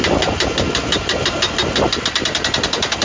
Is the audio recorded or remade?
recorded